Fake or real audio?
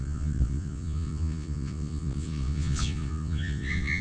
fake